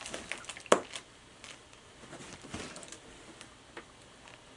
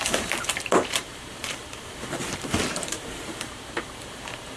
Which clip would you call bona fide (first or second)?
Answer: first